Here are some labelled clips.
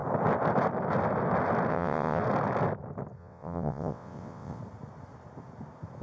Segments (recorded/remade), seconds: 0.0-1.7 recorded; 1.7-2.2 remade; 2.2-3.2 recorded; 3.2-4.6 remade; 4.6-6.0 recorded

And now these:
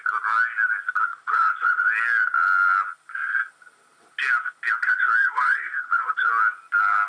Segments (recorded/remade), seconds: 0.0-1.1 recorded; 1.1-1.8 remade; 1.8-5.2 recorded; 5.2-6.3 remade; 6.3-7.1 recorded

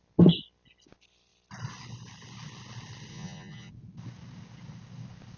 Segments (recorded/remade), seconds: 0.0-3.1 recorded; 3.1-3.7 remade; 3.7-5.4 recorded

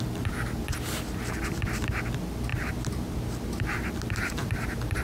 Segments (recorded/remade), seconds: 0.0-0.7 recorded; 0.7-1.4 remade; 1.4-2.5 recorded; 2.5-5.0 remade

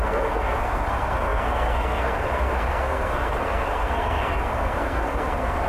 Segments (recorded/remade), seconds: 0.0-5.7 remade

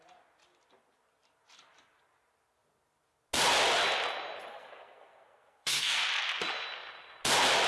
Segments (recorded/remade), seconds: 0.0-4.5 recorded; 4.5-6.3 remade; 6.3-7.7 recorded

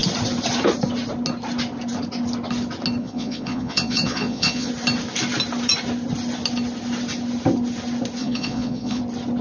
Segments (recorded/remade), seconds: 0.0-3.0 recorded; 3.0-4.7 remade; 4.7-8.2 recorded; 8.2-9.0 remade; 9.0-9.4 recorded